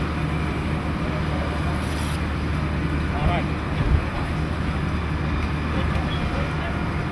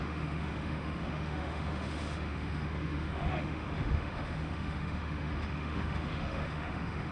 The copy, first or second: second